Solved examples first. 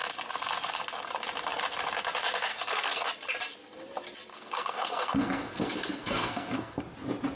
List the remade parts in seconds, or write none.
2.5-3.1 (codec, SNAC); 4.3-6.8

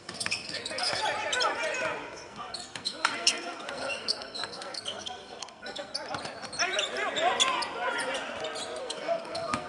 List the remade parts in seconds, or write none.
0.0-1.0 (codec, SNAC); 2.0-5.9; 8.8-9.7

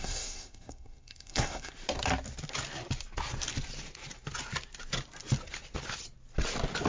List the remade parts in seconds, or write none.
0.0-1.7 (codec, SNAC)

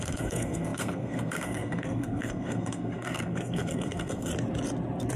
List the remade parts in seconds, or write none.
0.0-4.3 (codec, SNAC)

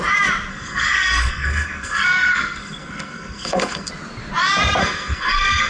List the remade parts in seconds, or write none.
0.5-3.9 (codec, SNAC); 4.8-5.7

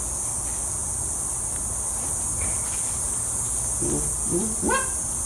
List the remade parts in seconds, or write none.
none

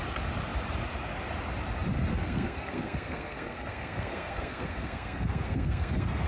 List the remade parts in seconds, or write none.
2.1-6.3 (codec, SNAC)

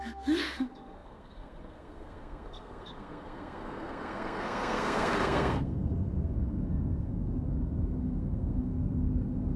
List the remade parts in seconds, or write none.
0.0-9.6 (codec, SNAC)